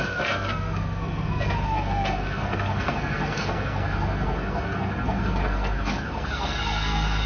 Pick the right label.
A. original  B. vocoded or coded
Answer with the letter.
B